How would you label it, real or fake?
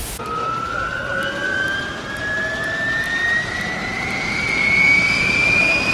fake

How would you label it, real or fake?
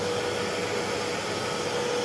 real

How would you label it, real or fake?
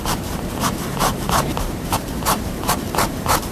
fake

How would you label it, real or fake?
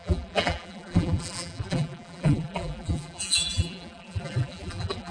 fake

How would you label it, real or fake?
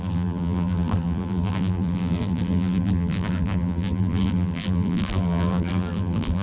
fake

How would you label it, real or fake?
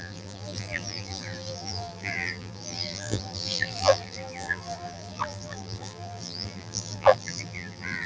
fake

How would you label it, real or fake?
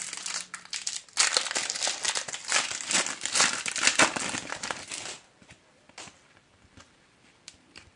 fake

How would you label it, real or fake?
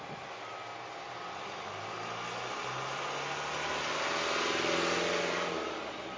real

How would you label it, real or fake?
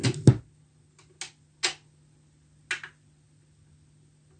real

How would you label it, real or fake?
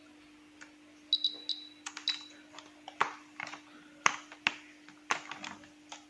real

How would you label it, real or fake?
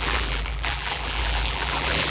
fake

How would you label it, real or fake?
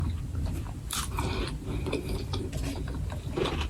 fake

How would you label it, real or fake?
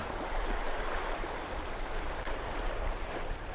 fake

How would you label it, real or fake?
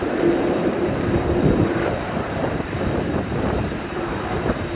fake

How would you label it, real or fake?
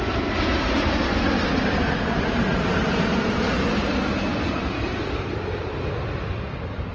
real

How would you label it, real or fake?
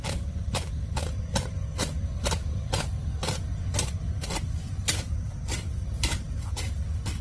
real